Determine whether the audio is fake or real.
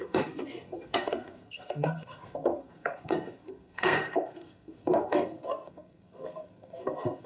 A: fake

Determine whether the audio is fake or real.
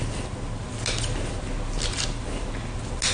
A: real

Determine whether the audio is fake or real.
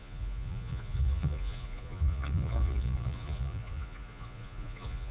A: fake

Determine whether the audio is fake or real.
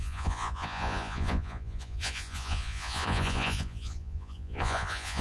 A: fake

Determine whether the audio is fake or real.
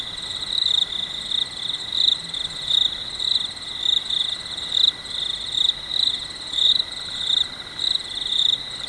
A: real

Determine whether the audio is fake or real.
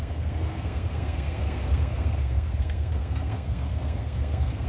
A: fake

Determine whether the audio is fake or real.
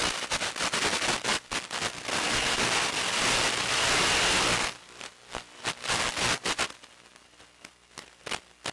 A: real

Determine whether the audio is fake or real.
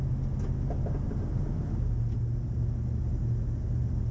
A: real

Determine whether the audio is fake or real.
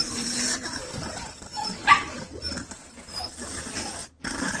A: fake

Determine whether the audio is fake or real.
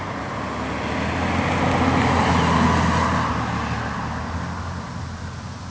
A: real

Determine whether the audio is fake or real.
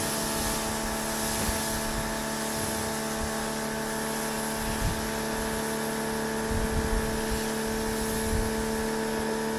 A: real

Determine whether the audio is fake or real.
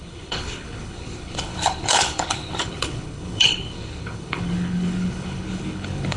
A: fake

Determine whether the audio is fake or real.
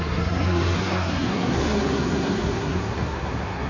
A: fake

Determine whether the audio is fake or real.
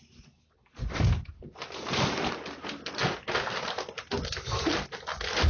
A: real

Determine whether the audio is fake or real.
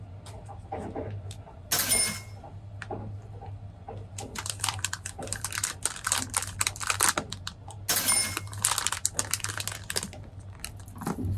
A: real